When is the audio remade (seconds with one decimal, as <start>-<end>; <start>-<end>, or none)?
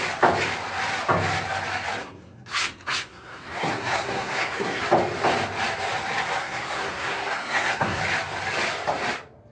2.0-4.8; 6.4-8.0